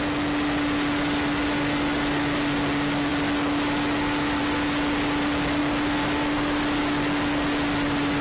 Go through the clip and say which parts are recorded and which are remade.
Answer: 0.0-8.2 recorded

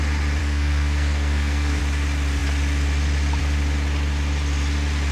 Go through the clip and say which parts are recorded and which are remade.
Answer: 0.0-0.4 recorded; 0.4-1.8 remade; 1.8-5.1 recorded

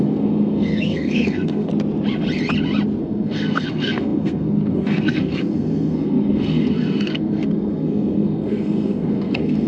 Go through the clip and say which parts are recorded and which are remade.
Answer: 0.0-1.7 remade; 1.7-3.0 recorded; 3.0-9.7 remade

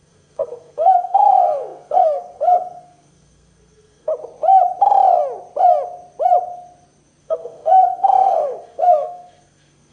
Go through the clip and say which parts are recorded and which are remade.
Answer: 0.0-4.1 remade; 4.1-7.2 recorded; 7.2-9.9 remade

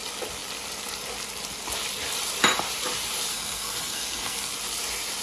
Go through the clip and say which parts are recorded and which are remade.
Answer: 0.0-3.3 recorded; 3.3-4.5 remade; 4.5-5.2 recorded

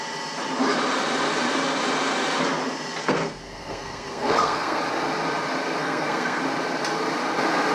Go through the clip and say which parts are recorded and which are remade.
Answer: 0.0-3.0 recorded; 3.0-4.8 remade; 4.8-5.8 recorded; 5.8-6.4 remade; 6.4-7.7 recorded

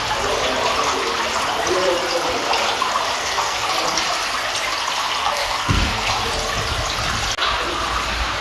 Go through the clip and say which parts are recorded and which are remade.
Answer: 0.0-3.2 recorded; 3.2-3.7 remade; 3.7-5.2 recorded; 5.2-6.1 remade; 6.1-8.4 recorded